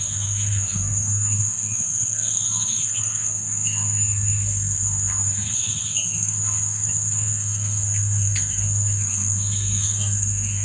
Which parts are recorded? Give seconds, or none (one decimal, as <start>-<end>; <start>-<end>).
none

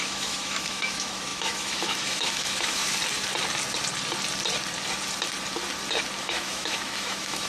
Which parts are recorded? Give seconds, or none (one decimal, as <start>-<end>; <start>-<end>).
2.8-6.2